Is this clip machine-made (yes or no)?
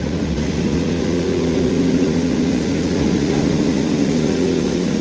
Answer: yes